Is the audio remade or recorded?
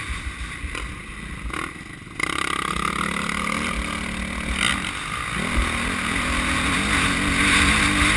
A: recorded